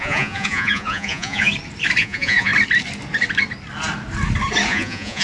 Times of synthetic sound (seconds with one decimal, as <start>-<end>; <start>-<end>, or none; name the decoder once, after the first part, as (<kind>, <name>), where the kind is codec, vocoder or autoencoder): 0.0-1.5 (vocoder, Vocos); 2.0-2.5; 4.7-5.2